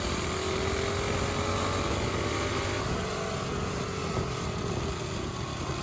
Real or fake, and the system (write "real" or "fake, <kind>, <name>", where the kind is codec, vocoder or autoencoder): real